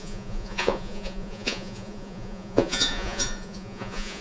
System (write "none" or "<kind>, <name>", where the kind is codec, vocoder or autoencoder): vocoder, Vocos